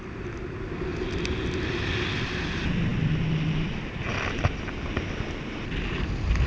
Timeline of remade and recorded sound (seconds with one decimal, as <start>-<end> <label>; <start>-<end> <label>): 0.0-6.5 recorded